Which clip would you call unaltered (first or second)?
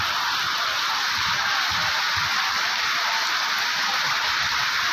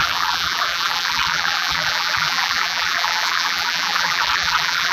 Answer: first